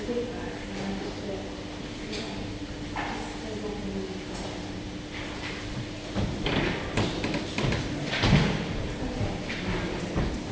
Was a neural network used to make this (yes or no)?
no